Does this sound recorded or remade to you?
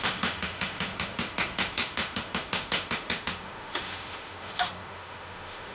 remade